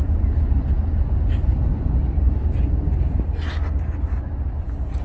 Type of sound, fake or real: real